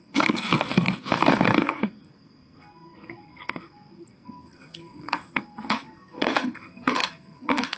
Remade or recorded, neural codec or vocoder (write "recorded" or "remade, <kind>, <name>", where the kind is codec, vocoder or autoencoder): remade, codec, SNAC